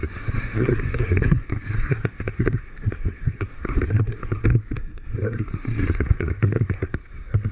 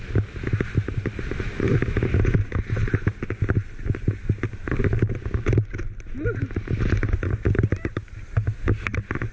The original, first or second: second